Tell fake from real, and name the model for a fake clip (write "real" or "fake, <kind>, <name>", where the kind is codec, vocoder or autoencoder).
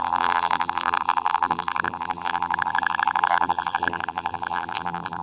fake, vocoder, BigVGAN v2